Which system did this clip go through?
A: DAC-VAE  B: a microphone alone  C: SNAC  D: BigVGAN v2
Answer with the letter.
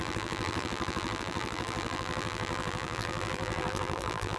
D